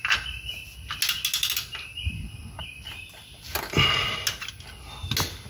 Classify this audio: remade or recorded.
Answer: recorded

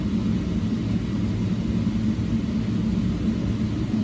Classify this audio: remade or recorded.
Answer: recorded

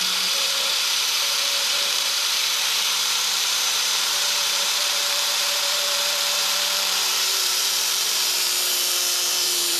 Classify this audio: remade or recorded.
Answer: remade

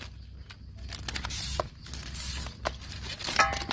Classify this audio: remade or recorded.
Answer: recorded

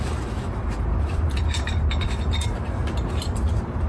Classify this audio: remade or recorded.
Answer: remade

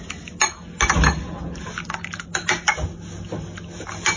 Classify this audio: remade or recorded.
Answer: recorded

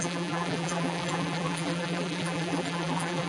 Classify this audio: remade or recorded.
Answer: remade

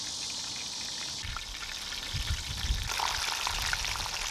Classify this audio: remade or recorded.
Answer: recorded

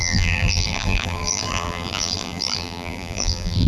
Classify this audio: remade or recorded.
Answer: remade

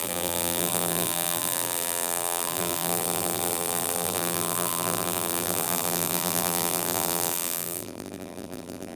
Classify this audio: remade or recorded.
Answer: remade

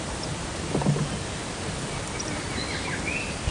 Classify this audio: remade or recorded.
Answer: recorded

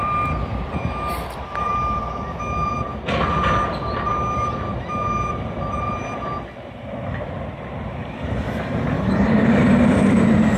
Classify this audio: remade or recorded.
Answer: remade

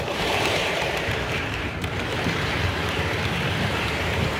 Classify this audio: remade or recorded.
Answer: remade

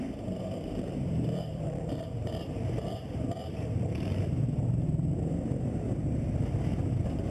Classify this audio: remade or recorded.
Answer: remade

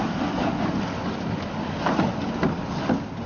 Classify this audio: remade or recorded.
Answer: recorded